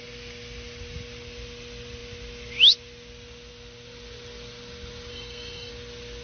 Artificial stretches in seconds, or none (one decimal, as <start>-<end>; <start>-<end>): 5.1-5.7